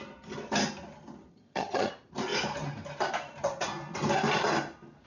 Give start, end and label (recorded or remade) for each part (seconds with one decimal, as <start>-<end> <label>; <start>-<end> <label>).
0.0-1.3 recorded; 1.3-1.9 remade; 1.9-5.1 recorded